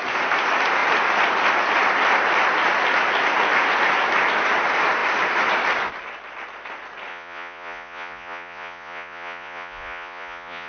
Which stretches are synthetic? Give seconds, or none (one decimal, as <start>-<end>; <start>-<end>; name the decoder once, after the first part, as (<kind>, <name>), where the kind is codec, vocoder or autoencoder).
7.1-10.7 (vocoder, Vocos)